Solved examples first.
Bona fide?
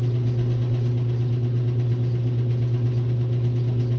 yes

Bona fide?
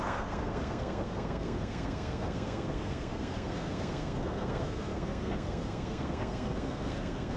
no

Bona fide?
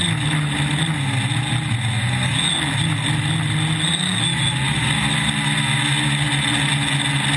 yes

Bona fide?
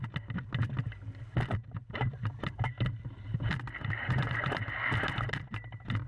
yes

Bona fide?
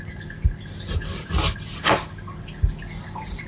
yes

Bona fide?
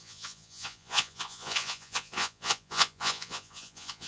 no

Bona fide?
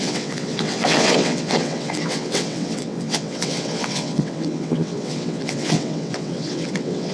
no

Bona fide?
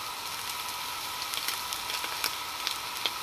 yes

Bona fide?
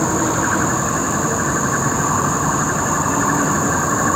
yes